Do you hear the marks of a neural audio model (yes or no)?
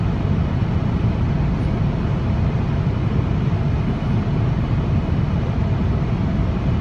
no